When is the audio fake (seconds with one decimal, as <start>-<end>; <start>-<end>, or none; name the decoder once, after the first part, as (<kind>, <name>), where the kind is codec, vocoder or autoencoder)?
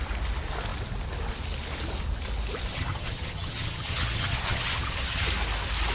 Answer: 2.7-5.3 (vocoder, HiFi-GAN)